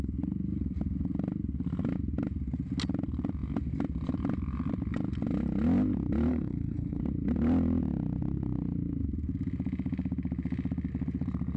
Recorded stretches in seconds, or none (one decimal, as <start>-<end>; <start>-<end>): 0.0-6.3; 7.0-11.6